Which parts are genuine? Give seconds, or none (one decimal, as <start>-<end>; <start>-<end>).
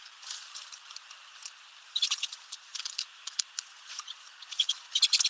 0.0-5.3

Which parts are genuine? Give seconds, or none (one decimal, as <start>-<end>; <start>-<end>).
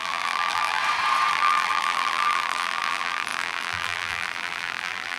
0.8-1.3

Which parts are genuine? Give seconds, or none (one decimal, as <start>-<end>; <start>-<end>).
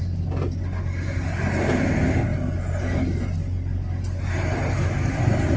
0.0-5.6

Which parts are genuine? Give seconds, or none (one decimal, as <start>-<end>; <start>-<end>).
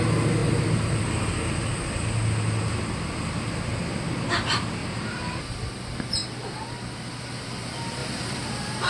0.0-0.4; 1.0-4.8; 5.5-8.9